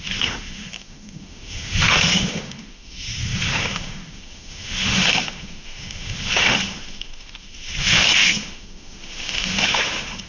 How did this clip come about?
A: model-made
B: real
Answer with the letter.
A